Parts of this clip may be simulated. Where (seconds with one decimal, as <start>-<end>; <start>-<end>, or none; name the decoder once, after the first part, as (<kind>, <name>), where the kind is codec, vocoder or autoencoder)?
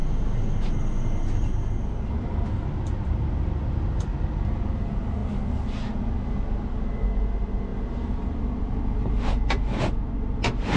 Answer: none